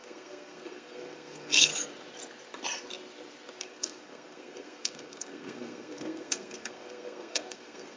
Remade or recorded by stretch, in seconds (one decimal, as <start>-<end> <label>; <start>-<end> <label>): 0.0-1.7 remade; 1.7-3.6 recorded; 3.6-8.0 remade